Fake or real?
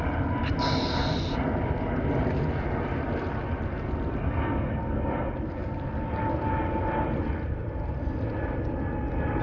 real